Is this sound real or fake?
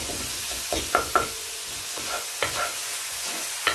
fake